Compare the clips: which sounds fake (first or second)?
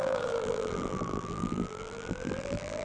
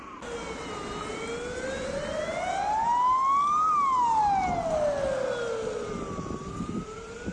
first